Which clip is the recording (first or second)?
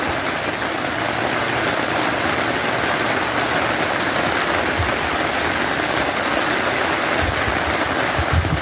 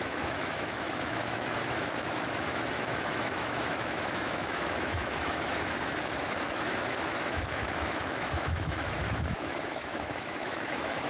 first